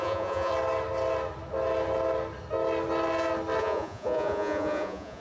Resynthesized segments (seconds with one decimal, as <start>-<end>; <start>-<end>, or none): 0.0-0.5; 3.6-5.2